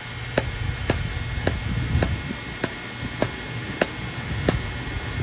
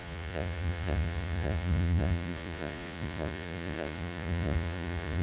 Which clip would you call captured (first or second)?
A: first